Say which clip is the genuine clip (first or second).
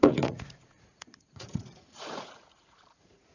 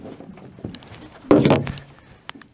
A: second